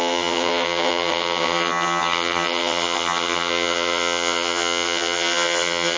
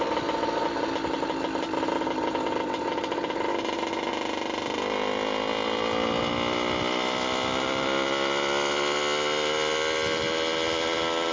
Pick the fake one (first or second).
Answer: first